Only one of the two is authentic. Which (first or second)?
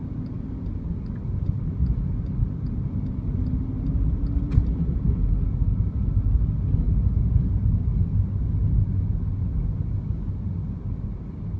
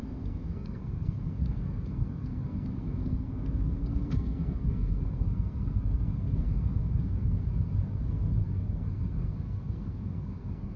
first